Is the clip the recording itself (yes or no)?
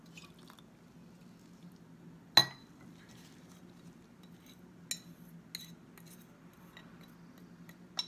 yes